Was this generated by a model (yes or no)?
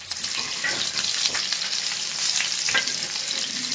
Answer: no